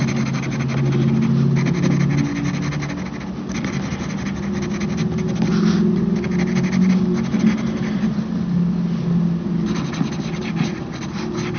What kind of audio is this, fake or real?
real